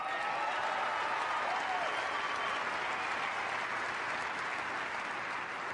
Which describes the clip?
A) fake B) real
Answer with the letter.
B